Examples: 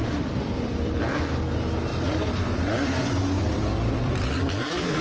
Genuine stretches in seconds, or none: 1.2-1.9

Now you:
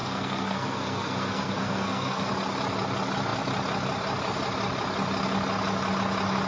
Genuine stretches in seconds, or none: 2.3-6.5